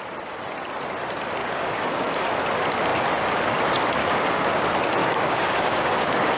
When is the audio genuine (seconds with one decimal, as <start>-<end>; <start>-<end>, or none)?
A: 0.0-1.4; 2.3-4.0; 4.6-5.0